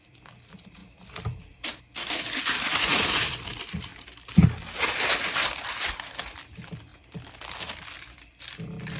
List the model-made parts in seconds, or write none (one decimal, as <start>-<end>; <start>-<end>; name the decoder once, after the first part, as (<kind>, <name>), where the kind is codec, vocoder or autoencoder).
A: 0.0-3.9 (vocoder, BigVGAN v2); 5.4-9.0